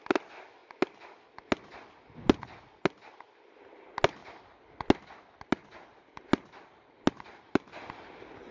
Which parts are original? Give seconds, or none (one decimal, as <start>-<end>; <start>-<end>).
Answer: 0.0-8.5